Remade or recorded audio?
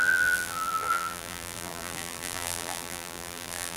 remade